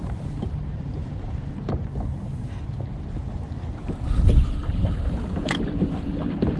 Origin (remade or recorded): remade